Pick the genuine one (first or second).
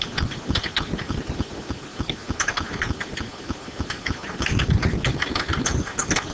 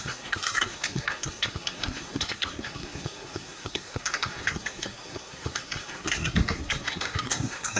first